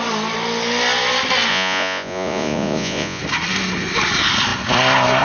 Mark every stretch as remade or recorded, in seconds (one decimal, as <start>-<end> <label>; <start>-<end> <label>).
0.0-1.5 recorded; 1.5-3.2 remade; 3.2-5.2 recorded